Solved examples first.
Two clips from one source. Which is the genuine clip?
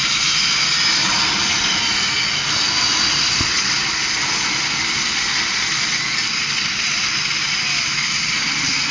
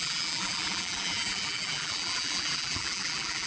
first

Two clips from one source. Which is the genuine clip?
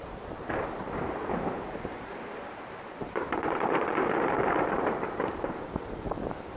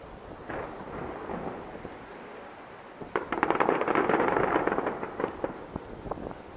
second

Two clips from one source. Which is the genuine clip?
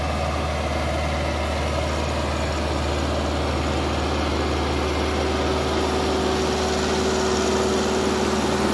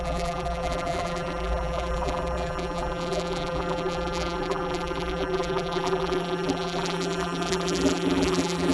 first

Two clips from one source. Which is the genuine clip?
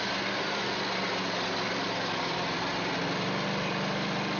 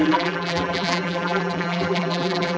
first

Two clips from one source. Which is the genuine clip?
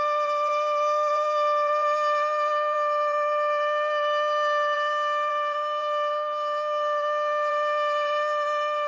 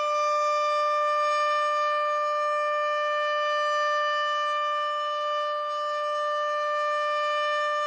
second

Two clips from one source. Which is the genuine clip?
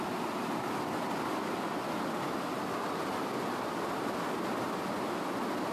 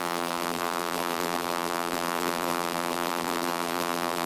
first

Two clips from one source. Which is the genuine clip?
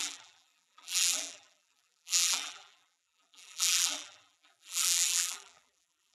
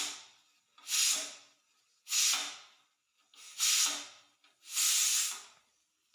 second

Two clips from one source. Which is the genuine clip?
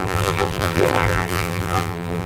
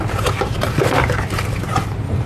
second